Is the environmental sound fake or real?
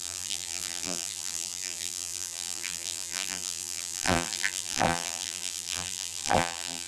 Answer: fake